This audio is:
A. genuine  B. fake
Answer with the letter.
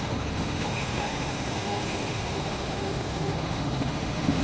B